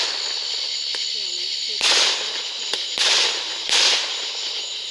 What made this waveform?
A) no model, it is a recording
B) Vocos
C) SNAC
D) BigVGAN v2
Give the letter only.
A